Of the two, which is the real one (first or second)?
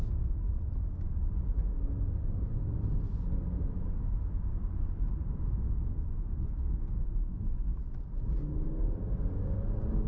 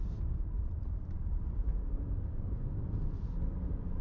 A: first